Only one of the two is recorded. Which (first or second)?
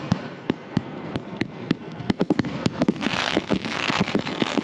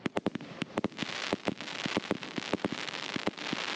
second